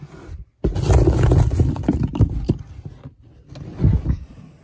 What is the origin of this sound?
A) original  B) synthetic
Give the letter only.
A